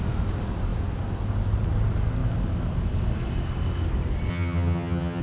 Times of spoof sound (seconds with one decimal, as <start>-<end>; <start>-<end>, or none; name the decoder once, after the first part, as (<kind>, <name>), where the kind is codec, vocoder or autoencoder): 4.3-5.2 (vocoder, HiFi-GAN)